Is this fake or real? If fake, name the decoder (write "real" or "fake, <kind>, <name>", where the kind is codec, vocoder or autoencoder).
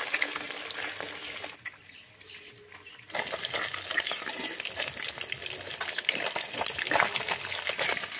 real